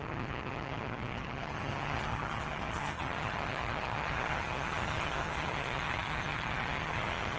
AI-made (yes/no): yes